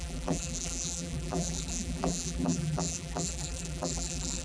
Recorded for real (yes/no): no